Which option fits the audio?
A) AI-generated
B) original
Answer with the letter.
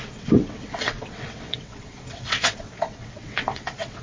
A